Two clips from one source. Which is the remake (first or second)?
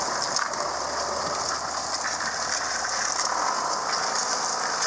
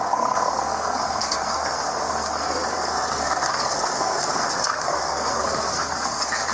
second